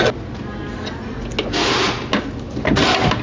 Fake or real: real